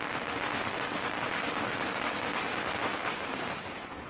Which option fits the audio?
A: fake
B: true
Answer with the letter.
B